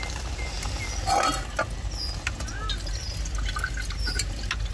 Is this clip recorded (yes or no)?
yes